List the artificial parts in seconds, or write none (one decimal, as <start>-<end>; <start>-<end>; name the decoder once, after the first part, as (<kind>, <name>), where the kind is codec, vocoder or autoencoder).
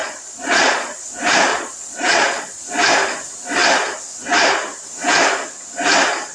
0.0-1.0 (vocoder, Vocos); 1.5-2.6